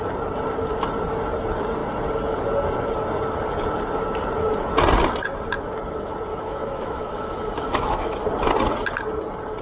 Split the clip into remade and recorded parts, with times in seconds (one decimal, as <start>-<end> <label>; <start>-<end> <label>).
0.0-6.3 recorded; 6.3-8.2 remade; 8.2-9.6 recorded